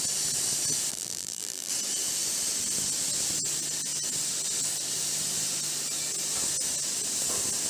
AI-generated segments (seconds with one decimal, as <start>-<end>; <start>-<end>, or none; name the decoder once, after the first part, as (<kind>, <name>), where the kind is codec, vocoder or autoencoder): 0.9-1.7 (vocoder, BigVGAN v2)